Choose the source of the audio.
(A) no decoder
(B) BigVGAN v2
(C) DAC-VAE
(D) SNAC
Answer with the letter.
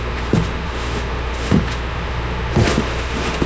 C